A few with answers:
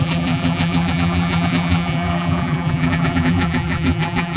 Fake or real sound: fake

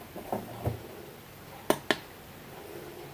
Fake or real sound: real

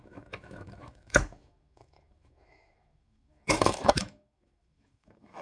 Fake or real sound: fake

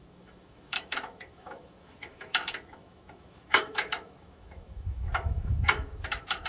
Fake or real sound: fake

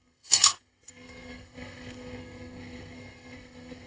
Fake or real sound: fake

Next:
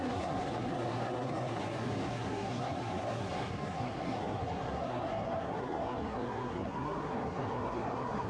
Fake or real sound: fake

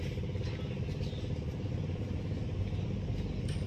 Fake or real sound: real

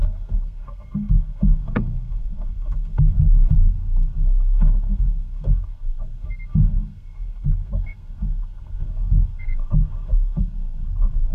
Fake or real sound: fake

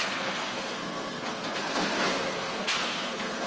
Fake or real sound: fake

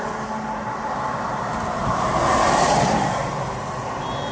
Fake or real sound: real